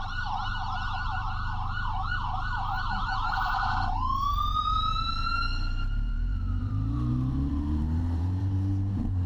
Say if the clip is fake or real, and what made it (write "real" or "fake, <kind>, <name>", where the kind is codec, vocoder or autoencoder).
fake, vocoder, BigVGAN v2